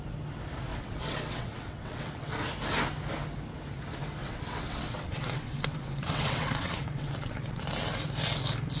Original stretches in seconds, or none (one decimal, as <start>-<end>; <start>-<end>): 0.0-0.7; 2.3-4.2; 7.6-8.8